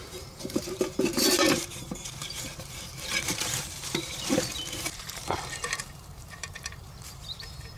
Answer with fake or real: fake